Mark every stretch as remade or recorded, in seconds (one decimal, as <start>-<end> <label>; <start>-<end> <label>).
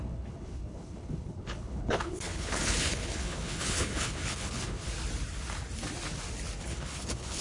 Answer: 0.0-4.9 remade; 4.9-6.6 recorded; 6.6-7.4 remade